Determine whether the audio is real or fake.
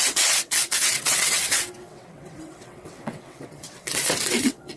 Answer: fake